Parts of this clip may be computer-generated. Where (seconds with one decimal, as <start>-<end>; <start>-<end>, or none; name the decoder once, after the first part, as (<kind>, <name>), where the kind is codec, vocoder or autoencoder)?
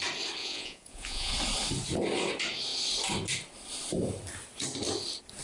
0.4-1.3 (vocoder, Vocos)